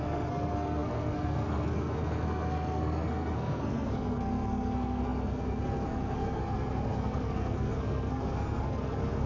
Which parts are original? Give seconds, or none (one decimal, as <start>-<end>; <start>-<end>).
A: none